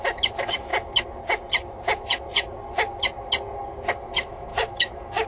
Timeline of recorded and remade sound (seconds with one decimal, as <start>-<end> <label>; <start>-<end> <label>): 0.0-0.7 remade; 0.7-3.9 recorded; 3.9-5.3 remade